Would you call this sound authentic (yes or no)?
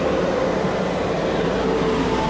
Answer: yes